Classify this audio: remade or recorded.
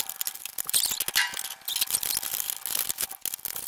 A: recorded